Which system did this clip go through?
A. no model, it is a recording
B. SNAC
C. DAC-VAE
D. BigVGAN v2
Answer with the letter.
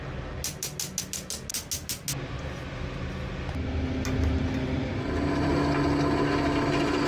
A